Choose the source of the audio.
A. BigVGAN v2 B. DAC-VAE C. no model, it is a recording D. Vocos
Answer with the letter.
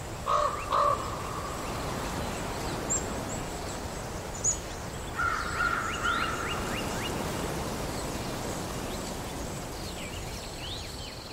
C